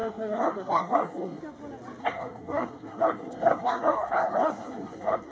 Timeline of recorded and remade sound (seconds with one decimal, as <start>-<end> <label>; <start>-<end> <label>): 0.0-1.4 remade; 1.4-2.0 recorded; 2.0-5.3 remade